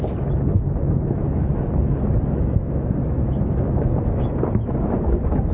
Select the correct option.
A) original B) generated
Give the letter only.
B